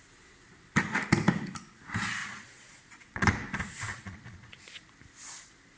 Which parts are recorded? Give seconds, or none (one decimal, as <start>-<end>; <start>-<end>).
0.0-2.2; 3.3-3.9; 4.7-5.8